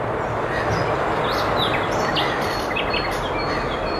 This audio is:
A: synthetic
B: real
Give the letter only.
B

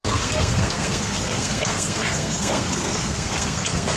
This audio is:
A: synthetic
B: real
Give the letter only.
A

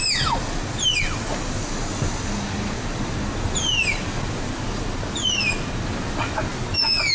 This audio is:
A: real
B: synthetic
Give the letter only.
A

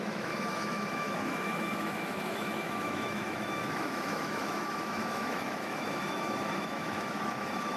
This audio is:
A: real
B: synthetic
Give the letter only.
B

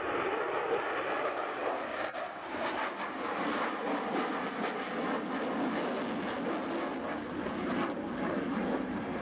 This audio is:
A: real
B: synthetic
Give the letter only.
A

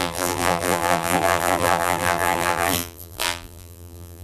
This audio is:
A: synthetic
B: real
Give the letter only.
A